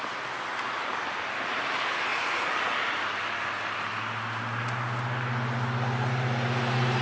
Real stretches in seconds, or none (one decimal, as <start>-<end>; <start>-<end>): 0.0-7.0